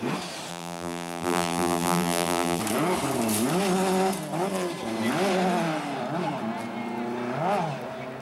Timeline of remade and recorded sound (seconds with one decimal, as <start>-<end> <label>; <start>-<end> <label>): 0.0-0.5 recorded; 0.5-2.6 remade; 2.6-8.2 recorded